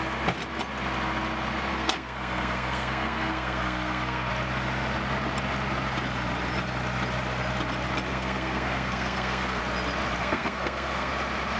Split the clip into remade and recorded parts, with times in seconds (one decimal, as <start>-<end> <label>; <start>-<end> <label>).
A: 0.0-1.7 recorded; 1.7-4.3 remade; 4.3-8.1 recorded; 8.1-9.6 remade; 9.6-10.2 recorded; 10.2-11.1 remade; 11.1-11.6 recorded